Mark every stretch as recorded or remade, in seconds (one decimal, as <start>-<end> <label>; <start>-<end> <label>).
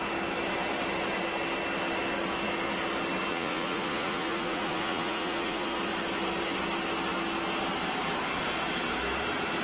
0.0-3.3 recorded; 3.3-5.8 remade; 5.8-9.6 recorded